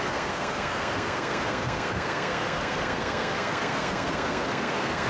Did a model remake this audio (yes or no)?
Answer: yes